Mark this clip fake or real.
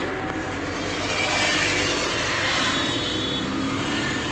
real